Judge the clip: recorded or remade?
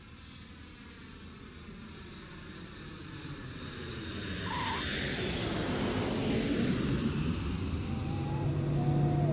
recorded